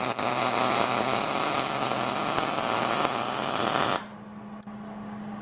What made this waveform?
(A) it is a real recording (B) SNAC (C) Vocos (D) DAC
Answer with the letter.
A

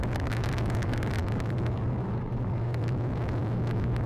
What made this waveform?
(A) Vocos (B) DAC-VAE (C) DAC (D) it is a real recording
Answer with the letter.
C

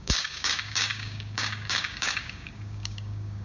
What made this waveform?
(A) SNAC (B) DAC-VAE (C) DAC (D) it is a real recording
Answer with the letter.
C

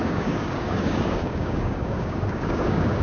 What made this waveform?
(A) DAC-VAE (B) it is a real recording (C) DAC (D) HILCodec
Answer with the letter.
C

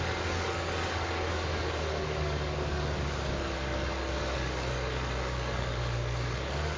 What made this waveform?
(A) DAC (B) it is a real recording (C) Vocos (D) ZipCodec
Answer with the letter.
A